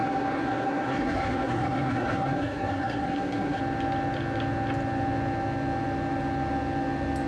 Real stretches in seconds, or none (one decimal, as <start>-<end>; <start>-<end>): 3.6-7.3